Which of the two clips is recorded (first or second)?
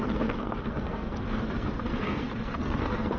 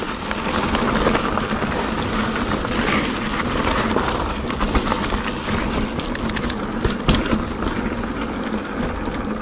second